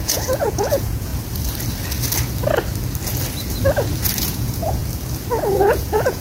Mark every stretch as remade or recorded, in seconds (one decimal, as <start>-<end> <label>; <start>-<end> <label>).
0.0-1.1 remade; 1.1-4.2 recorded; 4.2-4.8 remade; 4.8-5.5 recorded; 5.5-6.2 remade